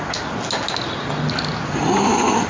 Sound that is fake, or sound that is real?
real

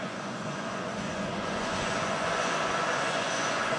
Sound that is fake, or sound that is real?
fake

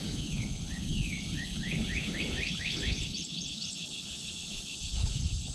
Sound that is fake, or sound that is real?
fake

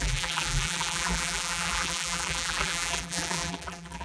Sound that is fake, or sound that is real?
fake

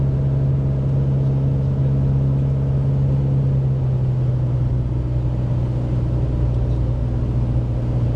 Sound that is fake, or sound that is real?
real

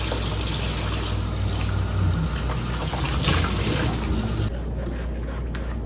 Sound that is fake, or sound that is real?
real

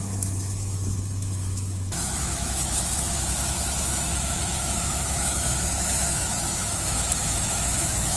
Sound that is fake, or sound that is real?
fake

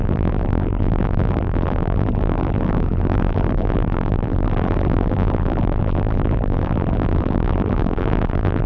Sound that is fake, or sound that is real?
fake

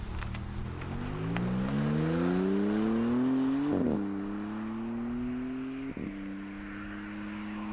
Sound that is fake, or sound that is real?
real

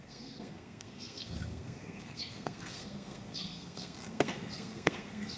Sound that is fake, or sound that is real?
fake